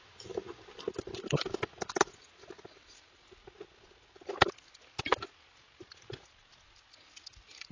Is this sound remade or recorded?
recorded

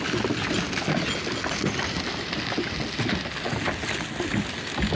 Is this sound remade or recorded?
recorded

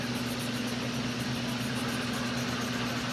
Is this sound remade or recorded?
recorded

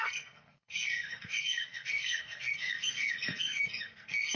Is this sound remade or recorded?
remade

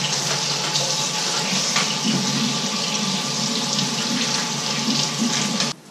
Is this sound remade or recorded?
recorded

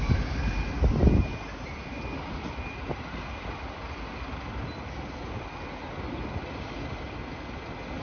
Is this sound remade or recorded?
recorded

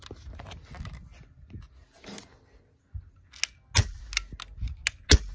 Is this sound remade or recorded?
recorded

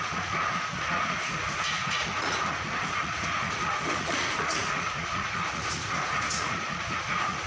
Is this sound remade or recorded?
remade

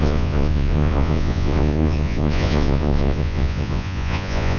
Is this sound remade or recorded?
remade